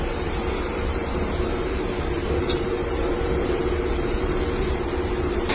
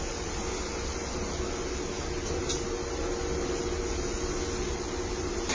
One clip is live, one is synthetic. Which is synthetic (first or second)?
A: first